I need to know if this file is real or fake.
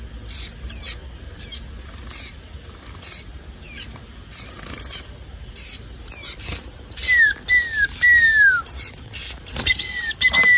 real